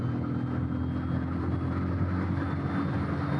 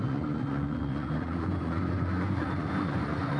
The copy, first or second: second